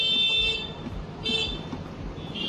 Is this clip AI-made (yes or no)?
no